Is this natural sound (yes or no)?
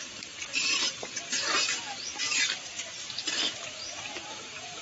no